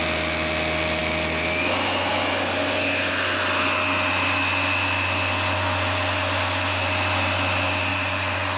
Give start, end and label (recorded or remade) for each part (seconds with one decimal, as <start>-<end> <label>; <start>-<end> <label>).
0.0-7.9 recorded; 7.9-8.6 remade